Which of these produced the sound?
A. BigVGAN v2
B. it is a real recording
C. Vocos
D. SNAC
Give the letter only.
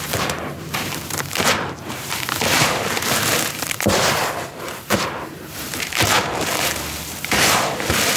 A